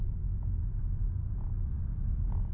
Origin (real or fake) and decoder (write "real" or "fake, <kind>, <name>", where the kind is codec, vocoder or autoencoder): real